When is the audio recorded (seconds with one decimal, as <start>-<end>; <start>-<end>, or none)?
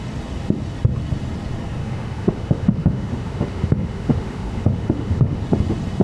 0.0-1.8; 5.4-6.0